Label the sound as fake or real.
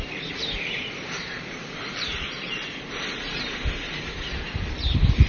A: fake